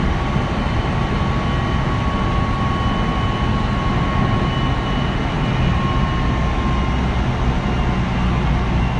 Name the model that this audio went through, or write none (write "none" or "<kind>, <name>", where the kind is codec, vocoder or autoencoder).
none